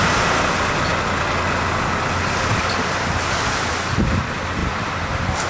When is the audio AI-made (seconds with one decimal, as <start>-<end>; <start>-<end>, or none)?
none